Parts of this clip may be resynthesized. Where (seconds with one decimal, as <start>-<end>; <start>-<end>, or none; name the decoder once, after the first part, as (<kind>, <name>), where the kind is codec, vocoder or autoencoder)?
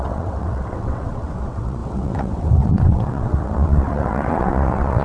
0.0-5.0 (vocoder, WaveNeXt)